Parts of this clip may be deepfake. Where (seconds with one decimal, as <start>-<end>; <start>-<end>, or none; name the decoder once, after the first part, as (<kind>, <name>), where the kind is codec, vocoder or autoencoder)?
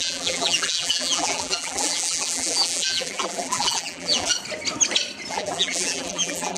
0.0-4.3 (vocoder, BigVGAN v2); 5.3-6.6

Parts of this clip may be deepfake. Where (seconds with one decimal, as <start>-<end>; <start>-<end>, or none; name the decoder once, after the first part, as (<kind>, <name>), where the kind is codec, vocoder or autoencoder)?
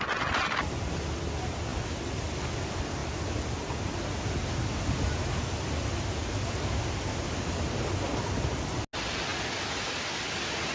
none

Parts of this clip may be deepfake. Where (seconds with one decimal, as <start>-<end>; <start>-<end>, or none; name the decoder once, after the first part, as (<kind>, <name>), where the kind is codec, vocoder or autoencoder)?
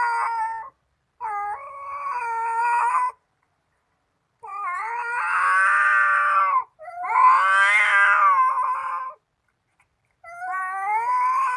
4.5-6.8 (vocoder, BigVGAN v2)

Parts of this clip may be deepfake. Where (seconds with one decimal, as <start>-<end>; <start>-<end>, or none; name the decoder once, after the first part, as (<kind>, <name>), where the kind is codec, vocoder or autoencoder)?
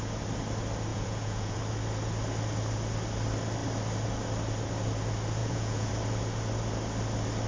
0.9-1.6 (vocoder, Vocos); 5.4-5.9